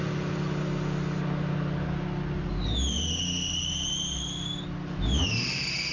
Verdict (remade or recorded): recorded